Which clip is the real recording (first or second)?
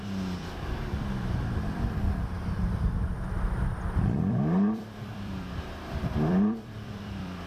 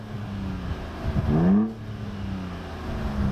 second